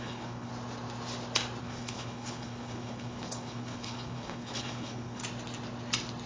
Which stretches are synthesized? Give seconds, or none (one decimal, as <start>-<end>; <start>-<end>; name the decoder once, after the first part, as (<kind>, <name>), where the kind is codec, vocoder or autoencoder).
0.0-0.5 (codec, HILCodec); 1.6-5.2